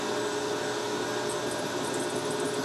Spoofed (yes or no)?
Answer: no